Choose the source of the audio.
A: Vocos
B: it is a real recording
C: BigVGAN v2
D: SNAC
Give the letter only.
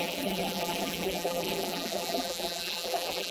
C